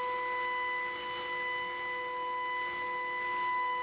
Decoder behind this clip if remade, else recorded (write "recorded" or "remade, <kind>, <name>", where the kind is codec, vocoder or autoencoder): recorded